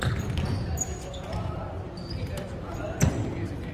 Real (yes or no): yes